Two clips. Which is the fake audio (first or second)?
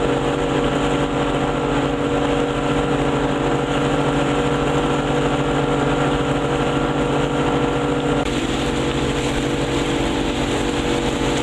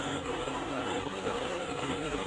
second